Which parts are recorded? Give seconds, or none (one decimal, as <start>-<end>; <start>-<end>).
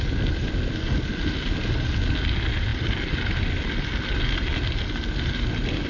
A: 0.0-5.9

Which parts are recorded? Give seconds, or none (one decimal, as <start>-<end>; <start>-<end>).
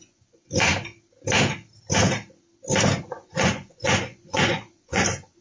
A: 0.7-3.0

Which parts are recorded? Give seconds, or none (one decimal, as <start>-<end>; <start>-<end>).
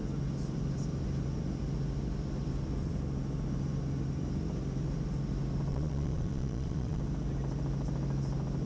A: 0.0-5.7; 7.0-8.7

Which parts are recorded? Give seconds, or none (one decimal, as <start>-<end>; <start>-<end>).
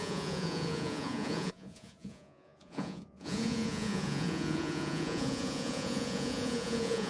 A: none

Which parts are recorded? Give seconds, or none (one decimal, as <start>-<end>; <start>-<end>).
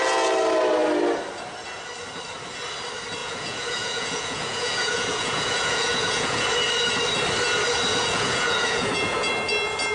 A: 0.0-3.2; 6.4-7.9; 9.3-9.9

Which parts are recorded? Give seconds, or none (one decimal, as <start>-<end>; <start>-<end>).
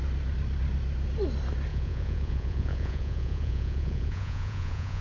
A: 0.0-1.7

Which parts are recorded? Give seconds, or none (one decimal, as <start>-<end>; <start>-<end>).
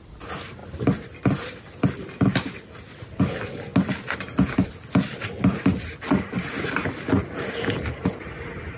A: 0.0-8.8